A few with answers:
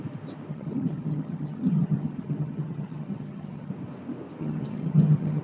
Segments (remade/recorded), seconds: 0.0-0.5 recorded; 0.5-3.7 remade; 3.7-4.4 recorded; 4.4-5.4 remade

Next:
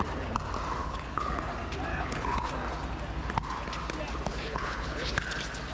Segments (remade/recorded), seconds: 0.0-0.8 recorded; 0.8-1.4 remade; 1.4-1.9 recorded; 1.9-2.5 remade; 2.5-4.3 recorded; 4.3-5.2 remade; 5.2-5.7 recorded

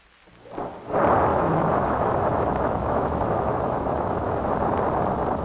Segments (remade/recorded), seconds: 0.0-1.3 recorded; 1.3-4.5 remade; 4.5-5.4 recorded

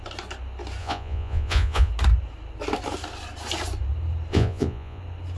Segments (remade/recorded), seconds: 0.0-0.8 recorded; 0.8-1.9 remade; 1.9-4.3 recorded; 4.3-5.0 remade; 5.0-5.4 recorded

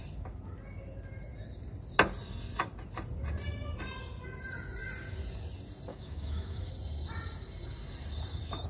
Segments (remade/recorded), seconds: 0.0-5.9 recorded; 5.9-6.7 remade; 6.7-8.7 recorded

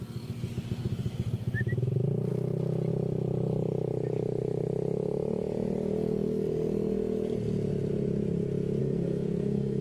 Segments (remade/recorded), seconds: 0.0-8.8 recorded; 8.8-9.8 remade